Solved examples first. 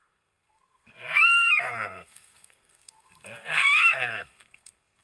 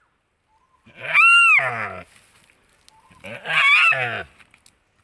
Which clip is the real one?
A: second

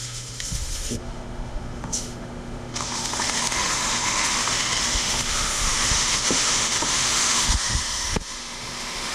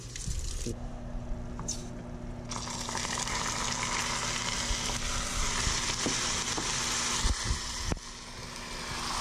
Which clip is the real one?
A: second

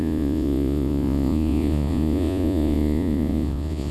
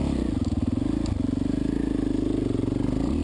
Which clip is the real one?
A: second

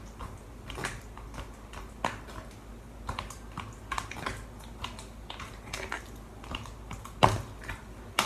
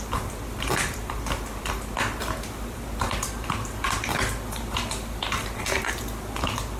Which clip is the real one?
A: first